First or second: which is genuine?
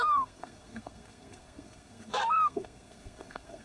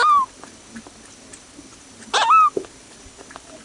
second